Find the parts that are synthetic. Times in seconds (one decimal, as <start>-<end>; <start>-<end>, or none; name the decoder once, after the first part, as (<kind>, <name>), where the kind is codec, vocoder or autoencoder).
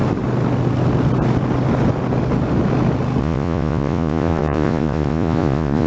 3.2-5.9 (vocoder, Vocos)